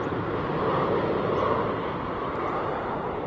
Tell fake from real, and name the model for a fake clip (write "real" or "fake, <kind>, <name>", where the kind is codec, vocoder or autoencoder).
real